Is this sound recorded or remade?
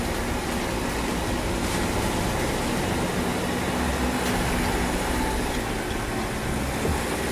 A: recorded